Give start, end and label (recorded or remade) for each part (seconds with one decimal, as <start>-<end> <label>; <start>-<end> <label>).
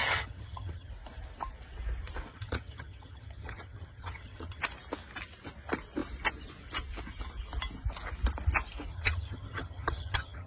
0.0-0.9 remade; 0.9-2.3 recorded; 2.3-4.6 remade; 4.6-8.9 recorded; 8.9-10.5 remade